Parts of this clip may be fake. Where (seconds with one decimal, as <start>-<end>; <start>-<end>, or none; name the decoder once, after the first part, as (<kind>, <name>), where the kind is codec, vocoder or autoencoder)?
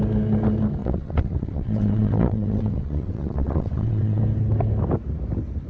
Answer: 0.8-4.2 (vocoder, WaveNeXt)